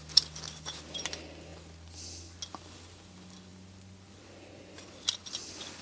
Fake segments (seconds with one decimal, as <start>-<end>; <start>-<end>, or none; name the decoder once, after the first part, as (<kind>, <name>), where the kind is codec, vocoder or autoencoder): none